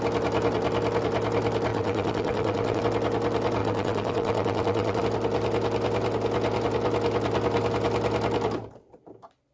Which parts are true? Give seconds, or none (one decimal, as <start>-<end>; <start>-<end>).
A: 0.0-1.7; 2.8-3.6; 5.0-9.5